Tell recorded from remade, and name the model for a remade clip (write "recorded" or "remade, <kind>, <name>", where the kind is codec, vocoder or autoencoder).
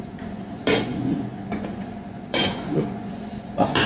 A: remade, vocoder, Vocos